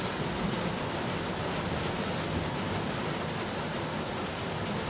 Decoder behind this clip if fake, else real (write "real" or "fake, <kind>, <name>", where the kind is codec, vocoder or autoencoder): real